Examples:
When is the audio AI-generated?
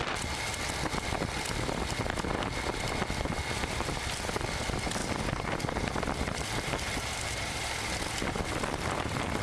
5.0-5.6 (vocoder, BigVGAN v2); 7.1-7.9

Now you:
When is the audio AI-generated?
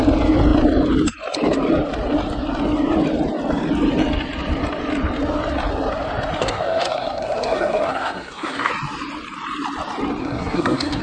6.4-8.7 (codec, SNAC); 10.2-11.0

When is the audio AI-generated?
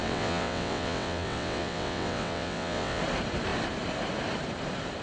0.0-3.0 (vocoder, WaveNeXt)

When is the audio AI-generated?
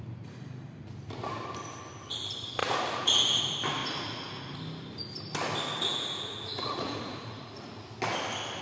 2.6-3.4 (vocoder, Vocos); 3.8-4.6; 5.9-7.9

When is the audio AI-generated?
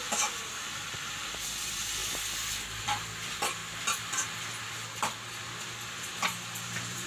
0.0-2.0 (vocoder, BigVGAN v2); 2.8-3.6; 6.6-7.1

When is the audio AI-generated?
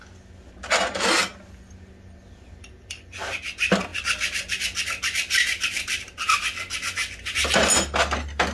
none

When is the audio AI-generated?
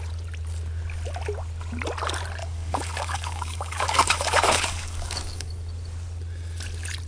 2.4-5.5 (codec, DAC)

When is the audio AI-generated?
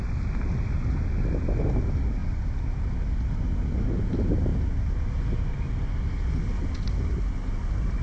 none